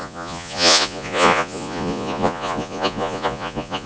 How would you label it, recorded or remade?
remade